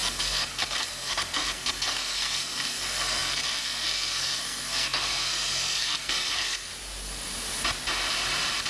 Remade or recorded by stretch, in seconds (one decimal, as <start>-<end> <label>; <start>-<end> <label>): 0.0-6.7 remade; 6.7-8.7 recorded